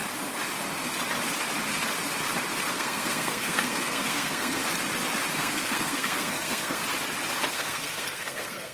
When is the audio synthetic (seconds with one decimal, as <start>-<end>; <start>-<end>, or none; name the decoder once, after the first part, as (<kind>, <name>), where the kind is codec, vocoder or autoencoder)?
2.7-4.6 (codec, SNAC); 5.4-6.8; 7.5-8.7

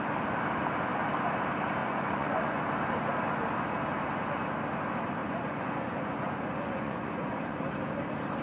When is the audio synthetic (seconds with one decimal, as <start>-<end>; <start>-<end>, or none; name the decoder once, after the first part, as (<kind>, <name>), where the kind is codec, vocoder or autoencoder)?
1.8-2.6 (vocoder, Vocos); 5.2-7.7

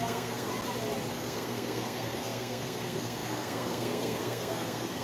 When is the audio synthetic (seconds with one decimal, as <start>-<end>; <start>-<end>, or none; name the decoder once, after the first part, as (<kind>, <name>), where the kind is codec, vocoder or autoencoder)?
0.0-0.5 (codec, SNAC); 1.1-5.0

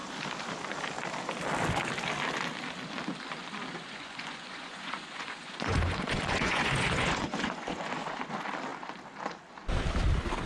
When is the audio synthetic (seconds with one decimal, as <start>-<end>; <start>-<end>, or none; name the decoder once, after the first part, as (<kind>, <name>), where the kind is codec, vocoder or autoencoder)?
3.7-8.2 (vocoder, Vocos)

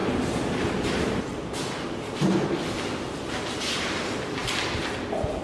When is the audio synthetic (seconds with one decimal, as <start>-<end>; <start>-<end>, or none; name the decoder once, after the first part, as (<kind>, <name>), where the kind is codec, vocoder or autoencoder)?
none